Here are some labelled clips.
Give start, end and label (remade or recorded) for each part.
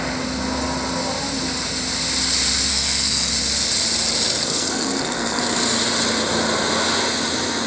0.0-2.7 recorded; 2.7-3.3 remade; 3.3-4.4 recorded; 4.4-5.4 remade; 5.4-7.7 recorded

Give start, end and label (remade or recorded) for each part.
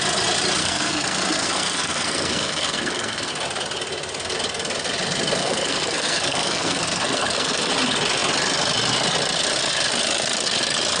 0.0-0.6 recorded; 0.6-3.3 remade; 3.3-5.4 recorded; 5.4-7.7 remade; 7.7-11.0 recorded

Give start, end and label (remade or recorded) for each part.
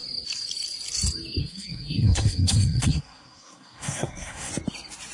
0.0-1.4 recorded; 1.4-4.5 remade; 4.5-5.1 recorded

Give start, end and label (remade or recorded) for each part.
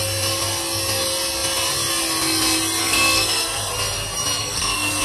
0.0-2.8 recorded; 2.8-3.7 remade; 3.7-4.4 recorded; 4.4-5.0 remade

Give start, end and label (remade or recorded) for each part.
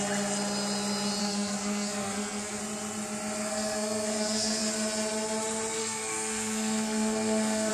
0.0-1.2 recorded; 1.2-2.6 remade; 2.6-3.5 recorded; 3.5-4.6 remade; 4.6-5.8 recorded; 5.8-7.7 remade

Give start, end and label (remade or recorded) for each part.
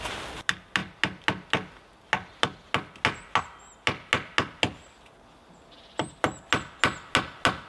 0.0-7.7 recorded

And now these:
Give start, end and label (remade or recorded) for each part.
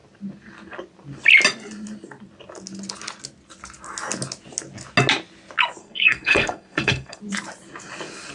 0.0-5.8 recorded; 5.8-7.2 remade; 7.2-8.3 recorded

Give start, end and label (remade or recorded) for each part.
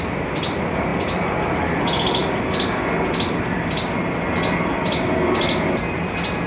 0.0-6.5 recorded